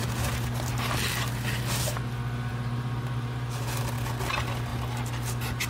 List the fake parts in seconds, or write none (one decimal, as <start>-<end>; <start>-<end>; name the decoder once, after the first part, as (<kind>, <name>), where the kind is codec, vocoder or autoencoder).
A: 2.5-3.8 (vocoder, BigVGAN v2)